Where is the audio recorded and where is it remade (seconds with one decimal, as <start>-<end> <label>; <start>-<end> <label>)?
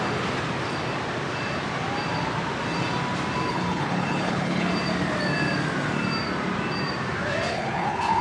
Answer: 0.0-3.5 recorded; 3.5-4.7 remade; 4.7-7.5 recorded; 7.5-8.2 remade